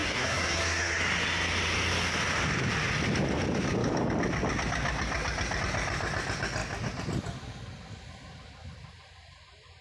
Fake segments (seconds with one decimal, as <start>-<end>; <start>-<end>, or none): 0.0-1.0